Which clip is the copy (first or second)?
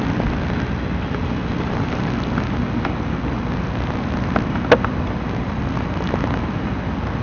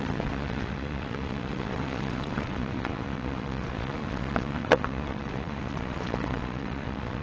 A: second